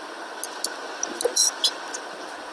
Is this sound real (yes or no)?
yes